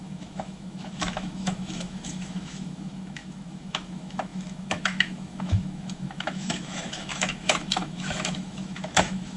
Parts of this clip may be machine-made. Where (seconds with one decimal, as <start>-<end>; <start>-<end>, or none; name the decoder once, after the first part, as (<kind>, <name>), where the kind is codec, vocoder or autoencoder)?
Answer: 0.0-9.4 (autoencoder, DAC-VAE)